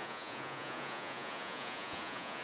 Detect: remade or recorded remade